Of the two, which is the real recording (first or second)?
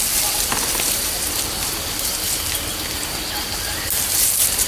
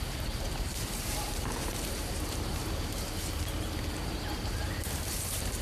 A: first